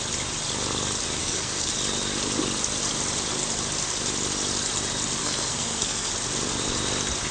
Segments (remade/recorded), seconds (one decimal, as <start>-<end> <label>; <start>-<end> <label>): 0.0-1.2 recorded; 1.2-1.7 remade; 1.7-5.2 recorded; 5.2-6.1 remade; 6.1-7.3 recorded